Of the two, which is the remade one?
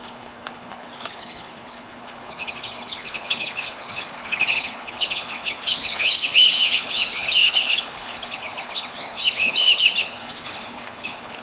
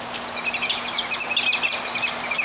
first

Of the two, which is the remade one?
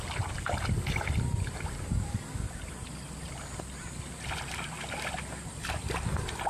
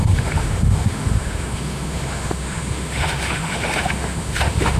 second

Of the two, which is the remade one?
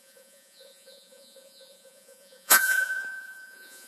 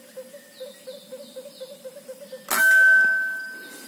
first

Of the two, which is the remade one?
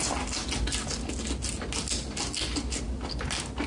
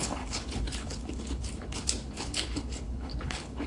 second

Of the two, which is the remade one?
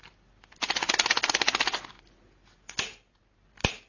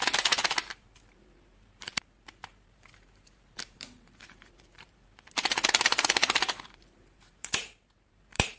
second